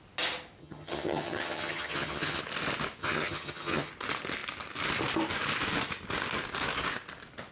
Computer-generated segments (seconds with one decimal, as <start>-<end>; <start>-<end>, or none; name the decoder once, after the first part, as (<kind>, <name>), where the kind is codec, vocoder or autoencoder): 0.6-2.4 (vocoder, HiFi-GAN); 3.0-3.9